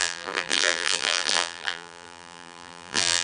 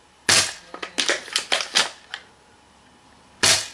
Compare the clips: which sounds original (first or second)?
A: second